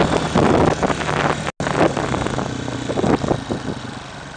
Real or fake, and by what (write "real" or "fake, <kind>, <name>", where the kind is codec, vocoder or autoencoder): real